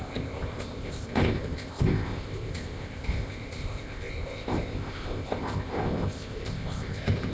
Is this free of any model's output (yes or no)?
no